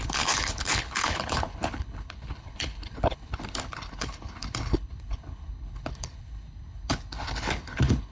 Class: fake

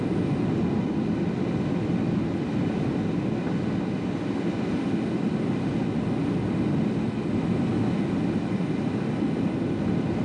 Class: real